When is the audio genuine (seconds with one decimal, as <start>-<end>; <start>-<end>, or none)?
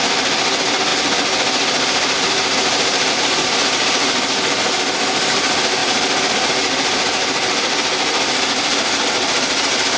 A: 0.0-5.8; 6.3-10.0